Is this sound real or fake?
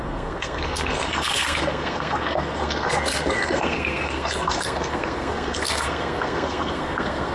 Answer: fake